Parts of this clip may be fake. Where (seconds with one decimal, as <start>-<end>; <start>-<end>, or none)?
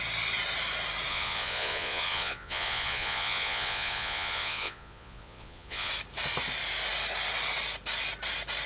1.1-5.9